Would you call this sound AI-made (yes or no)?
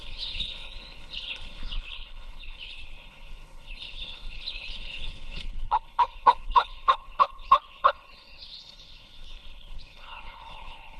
yes